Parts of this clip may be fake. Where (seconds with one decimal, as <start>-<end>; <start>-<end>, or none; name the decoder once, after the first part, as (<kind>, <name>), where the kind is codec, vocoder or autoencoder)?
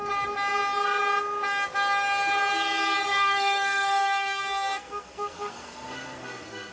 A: 3.1-6.7 (codec, SNAC)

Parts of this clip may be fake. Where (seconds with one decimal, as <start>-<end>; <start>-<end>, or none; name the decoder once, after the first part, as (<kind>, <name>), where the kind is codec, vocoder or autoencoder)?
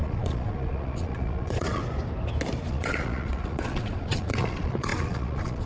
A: 0.0-1.8 (vocoder, Vocos); 2.7-5.7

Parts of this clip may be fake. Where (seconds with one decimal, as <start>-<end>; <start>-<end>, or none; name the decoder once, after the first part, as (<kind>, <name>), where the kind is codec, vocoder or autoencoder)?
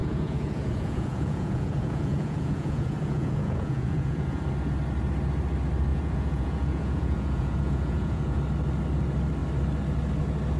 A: 0.0-4.4 (vocoder, Vocos); 5.9-8.4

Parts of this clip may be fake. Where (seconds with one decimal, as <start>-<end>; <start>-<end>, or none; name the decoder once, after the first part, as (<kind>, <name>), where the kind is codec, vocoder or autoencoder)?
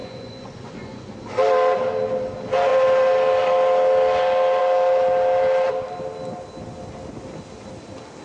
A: 0.0-1.1 (vocoder, Vocos)